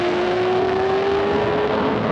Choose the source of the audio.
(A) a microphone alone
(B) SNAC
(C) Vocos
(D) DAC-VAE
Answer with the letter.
B